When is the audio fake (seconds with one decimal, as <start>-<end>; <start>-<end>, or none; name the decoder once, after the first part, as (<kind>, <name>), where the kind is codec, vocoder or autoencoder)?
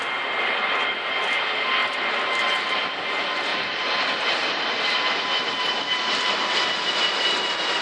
1.8-2.4 (vocoder, BigVGAN v2); 3.5-6.5